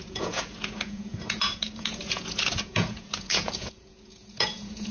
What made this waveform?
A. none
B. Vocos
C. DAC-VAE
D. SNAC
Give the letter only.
B